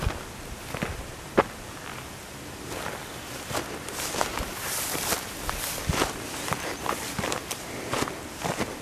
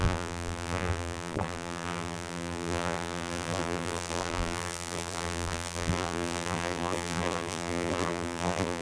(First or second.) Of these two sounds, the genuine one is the first